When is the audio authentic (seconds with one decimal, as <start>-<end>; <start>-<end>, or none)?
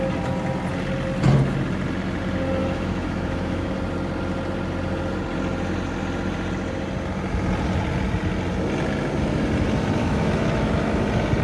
0.0-2.6; 3.7-10.0; 11.0-11.4